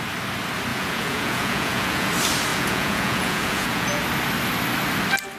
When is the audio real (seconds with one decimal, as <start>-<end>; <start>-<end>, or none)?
0.0-0.7; 2.1-2.5; 4.0-5.4